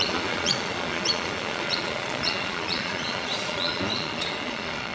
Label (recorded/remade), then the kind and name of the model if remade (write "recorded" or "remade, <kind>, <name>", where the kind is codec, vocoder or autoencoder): remade, vocoder, Vocos